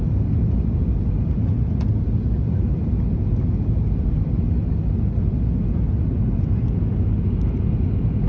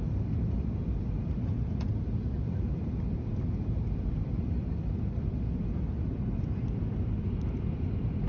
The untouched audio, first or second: first